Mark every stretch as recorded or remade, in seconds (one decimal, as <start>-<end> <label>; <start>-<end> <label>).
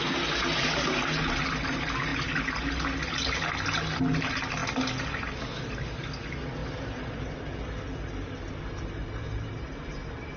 0.0-6.6 recorded; 6.6-10.4 remade